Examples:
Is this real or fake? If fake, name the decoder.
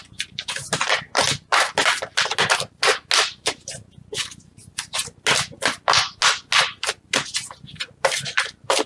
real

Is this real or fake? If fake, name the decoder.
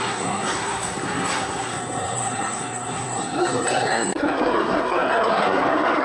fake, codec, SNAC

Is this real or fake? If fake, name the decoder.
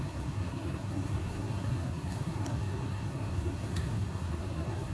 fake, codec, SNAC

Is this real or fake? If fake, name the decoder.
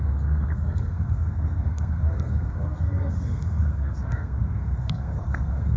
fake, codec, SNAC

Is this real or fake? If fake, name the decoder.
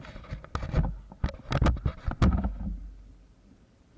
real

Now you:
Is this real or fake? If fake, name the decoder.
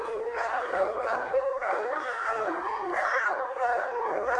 fake, codec, SNAC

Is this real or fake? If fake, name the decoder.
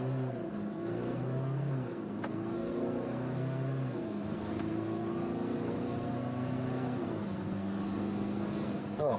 fake, codec, SNAC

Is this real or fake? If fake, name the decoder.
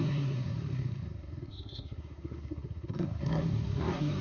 fake, codec, SNAC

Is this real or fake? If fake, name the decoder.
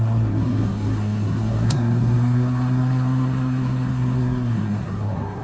fake, codec, SNAC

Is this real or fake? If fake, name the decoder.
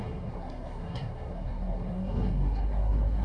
fake, codec, SNAC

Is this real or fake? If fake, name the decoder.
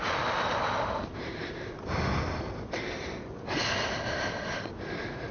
real